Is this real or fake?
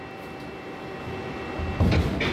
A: real